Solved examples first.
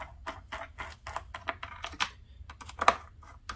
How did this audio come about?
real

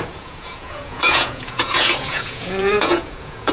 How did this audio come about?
fake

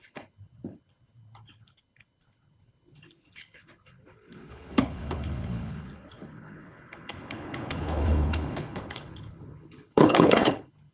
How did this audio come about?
fake